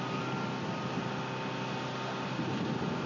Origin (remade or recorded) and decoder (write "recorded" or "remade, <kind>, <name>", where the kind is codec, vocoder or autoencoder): recorded